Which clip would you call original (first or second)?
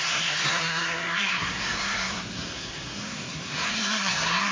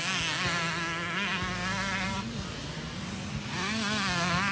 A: second